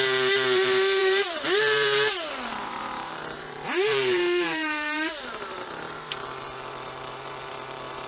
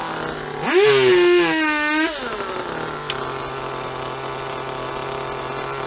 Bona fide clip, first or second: second